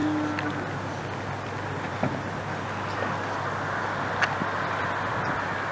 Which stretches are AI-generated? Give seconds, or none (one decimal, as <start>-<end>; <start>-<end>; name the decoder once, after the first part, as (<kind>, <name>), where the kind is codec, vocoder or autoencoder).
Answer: none